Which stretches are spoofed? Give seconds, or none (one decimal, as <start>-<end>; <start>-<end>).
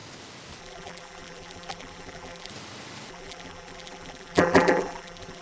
0.6-2.5; 3.1-5.4